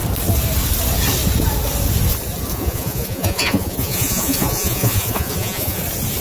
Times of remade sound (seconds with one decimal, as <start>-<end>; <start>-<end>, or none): 2.5-5.8